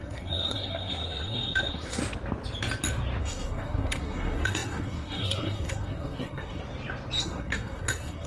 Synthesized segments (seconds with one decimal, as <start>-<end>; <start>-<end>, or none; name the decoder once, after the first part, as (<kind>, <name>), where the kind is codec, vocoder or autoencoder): 0.0-2.0 (codec, SNAC); 3.2-6.6; 7.2-8.3